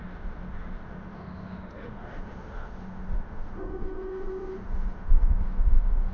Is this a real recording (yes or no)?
no